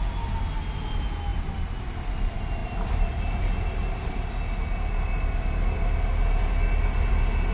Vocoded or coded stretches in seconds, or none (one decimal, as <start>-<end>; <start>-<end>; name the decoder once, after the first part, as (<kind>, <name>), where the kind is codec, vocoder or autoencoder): none